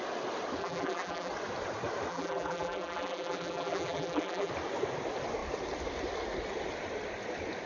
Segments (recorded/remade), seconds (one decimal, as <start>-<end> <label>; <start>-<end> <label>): 0.0-0.6 recorded; 0.6-1.3 remade; 1.3-2.1 recorded; 2.1-4.5 remade; 4.5-7.7 recorded